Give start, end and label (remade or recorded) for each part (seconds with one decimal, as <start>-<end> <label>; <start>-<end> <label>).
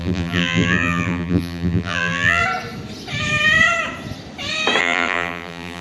0.0-2.4 remade; 2.4-4.8 recorded; 4.8-5.8 remade